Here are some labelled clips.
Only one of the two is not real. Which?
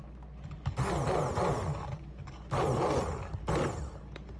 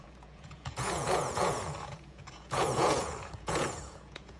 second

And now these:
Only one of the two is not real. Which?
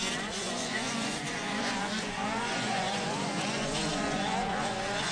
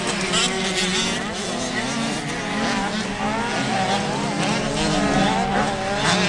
first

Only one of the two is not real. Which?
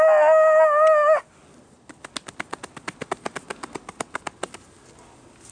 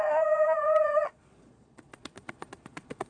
second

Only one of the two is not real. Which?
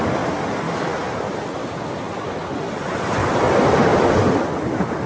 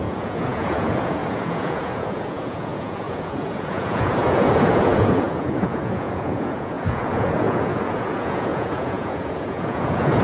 second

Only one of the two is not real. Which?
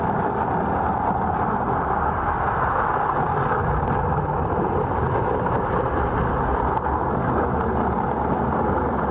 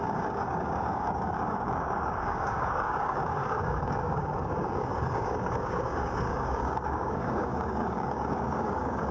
second